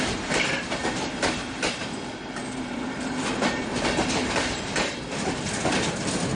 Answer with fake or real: fake